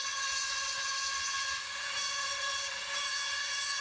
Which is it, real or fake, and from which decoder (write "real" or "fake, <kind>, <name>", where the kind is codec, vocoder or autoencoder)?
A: fake, vocoder, HiFi-GAN